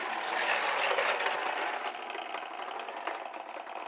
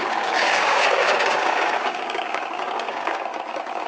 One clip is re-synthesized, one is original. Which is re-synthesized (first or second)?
second